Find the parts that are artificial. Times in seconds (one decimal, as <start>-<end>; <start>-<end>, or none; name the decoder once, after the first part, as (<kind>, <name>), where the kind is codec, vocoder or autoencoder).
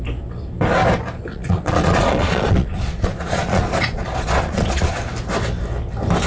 1.3-5.0 (vocoder, Vocos)